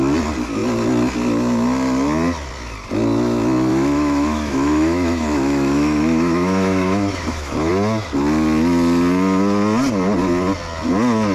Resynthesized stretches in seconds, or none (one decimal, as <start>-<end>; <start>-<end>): 3.7-7.7

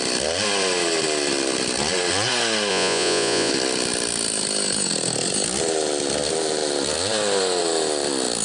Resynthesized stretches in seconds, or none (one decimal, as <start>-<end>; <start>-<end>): 2.7-3.5

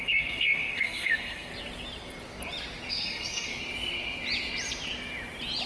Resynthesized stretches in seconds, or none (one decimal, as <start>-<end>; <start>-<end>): 0.0-1.5; 2.9-3.5